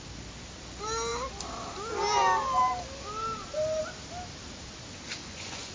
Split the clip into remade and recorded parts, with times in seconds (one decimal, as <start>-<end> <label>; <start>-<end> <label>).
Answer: 0.0-5.2 recorded; 5.2-5.7 remade